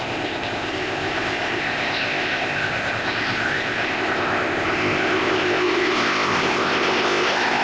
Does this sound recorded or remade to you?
remade